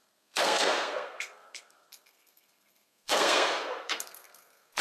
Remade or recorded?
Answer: remade